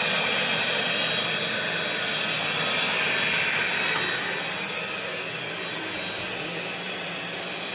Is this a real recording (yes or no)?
yes